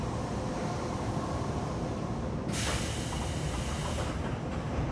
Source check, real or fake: real